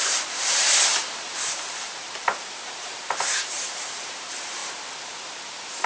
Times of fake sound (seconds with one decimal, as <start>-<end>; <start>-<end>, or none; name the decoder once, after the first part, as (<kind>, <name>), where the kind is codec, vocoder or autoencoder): 0.0-4.6 (vocoder, BigVGAN v2); 5.5-5.9